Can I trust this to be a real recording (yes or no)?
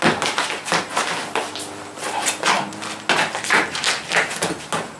yes